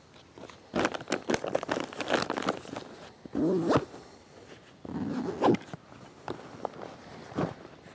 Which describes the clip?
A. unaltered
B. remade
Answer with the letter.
A